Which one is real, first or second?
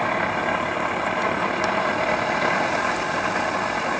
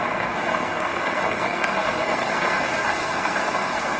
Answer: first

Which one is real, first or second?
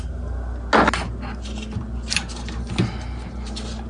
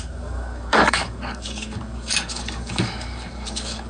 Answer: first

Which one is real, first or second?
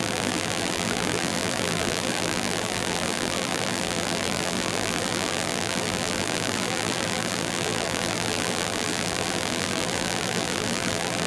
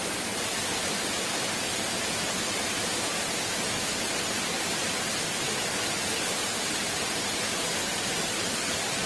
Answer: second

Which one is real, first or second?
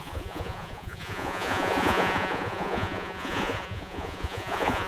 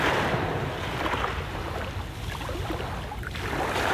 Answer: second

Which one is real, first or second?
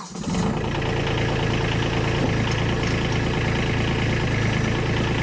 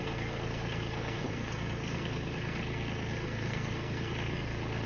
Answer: first